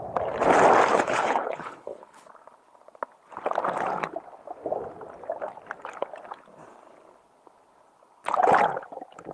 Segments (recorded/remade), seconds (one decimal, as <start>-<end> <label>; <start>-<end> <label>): 0.0-0.9 recorded; 0.9-2.3 remade; 2.3-9.3 recorded